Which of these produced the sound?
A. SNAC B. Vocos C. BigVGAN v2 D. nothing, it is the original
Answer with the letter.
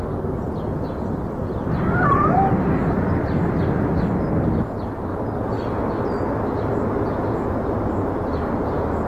D